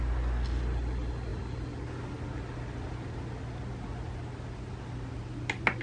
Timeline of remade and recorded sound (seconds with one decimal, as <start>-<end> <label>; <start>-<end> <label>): 0.0-5.8 recorded